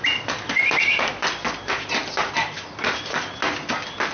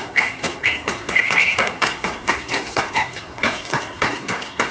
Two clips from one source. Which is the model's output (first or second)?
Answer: second